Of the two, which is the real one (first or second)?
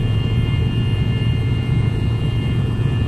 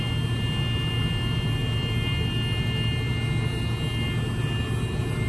second